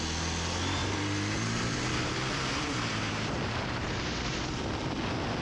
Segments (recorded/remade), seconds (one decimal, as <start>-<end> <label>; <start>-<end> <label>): 0.0-0.8 recorded; 0.8-4.0 remade; 4.0-5.4 recorded